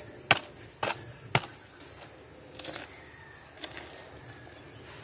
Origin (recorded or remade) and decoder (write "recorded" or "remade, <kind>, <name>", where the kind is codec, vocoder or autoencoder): recorded